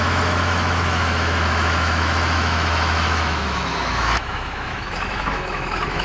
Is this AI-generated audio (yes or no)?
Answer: yes